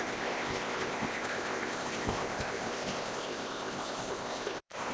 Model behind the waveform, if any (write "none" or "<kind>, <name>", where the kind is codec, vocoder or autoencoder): codec, ZipCodec